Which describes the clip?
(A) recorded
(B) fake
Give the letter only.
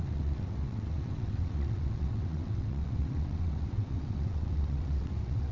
B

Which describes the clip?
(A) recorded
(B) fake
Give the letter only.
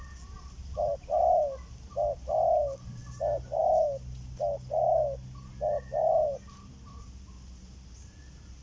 A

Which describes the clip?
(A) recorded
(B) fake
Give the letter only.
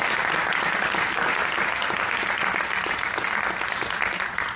A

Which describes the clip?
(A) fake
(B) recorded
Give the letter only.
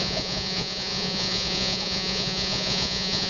A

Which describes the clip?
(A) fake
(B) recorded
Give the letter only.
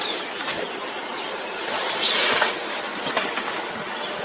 B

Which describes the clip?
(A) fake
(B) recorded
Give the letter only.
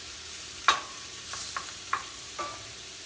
A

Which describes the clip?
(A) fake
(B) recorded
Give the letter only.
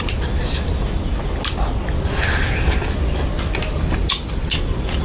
B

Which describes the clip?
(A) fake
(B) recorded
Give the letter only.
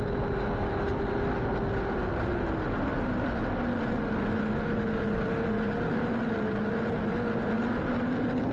B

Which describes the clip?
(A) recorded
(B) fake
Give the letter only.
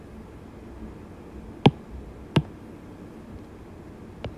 A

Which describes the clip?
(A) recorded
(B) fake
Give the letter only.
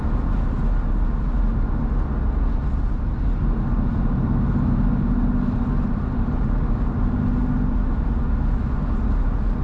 A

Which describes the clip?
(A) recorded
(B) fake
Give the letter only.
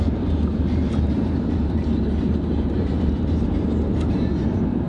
B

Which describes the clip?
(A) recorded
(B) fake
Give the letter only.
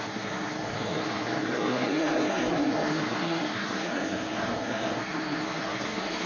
B